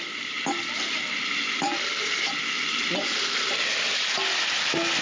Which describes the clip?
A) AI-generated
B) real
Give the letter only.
B